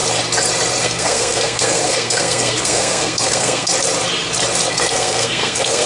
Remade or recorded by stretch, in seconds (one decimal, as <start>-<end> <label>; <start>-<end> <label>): 0.0-0.8 recorded; 0.8-3.7 remade; 3.7-4.7 recorded; 4.7-5.9 remade